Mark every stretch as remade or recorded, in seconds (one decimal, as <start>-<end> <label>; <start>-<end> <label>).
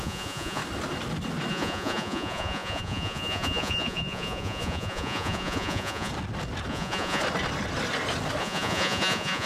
0.0-0.6 remade; 0.6-1.5 recorded; 1.5-6.1 remade; 6.1-6.7 recorded; 6.7-7.2 remade; 7.2-8.4 recorded; 8.4-9.5 remade